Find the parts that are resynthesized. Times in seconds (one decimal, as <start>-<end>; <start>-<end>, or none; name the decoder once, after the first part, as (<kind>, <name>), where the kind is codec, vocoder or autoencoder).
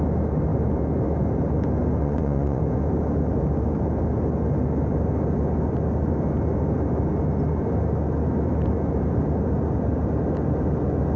2.0-2.6 (vocoder, Vocos)